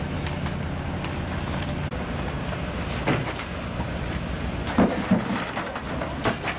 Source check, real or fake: real